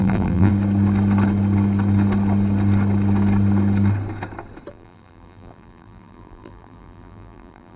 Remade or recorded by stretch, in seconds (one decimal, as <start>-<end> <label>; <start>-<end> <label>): 0.0-0.5 remade; 0.5-4.7 recorded; 4.7-7.8 remade

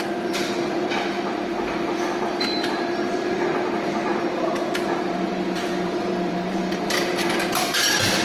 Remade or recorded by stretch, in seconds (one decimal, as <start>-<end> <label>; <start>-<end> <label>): 0.0-8.2 remade

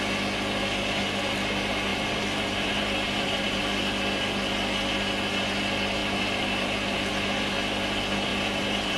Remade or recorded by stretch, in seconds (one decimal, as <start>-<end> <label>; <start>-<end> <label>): 0.0-1.9 recorded; 1.9-3.6 remade; 3.6-6.0 recorded; 6.0-7.1 remade; 7.1-8.3 recorded; 8.3-9.0 remade